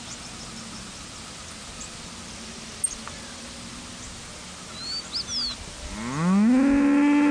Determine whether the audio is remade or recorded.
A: recorded